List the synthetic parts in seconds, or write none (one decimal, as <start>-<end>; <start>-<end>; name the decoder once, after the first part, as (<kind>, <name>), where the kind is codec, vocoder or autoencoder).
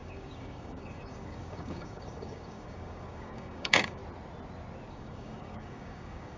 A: 0.0-4.0 (codec, DAC); 4.9-6.4